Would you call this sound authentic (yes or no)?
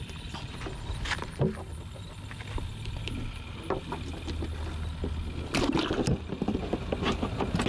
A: yes